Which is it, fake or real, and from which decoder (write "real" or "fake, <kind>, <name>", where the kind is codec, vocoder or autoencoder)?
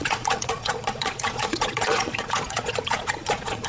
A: fake, vocoder, Vocos